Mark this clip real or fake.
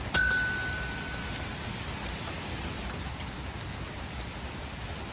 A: real